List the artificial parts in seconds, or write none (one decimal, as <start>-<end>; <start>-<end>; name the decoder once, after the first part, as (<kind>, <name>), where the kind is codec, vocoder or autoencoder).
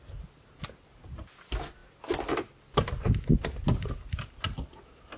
none